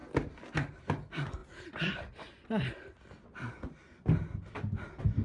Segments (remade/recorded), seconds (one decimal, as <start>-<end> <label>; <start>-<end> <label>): 0.0-5.2 recorded